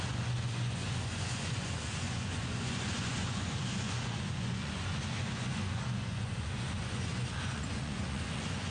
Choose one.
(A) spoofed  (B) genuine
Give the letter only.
A